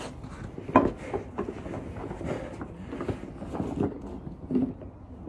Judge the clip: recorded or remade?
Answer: recorded